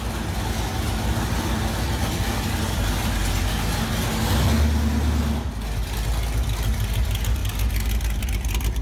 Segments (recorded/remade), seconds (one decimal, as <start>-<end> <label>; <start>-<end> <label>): 0.0-8.8 recorded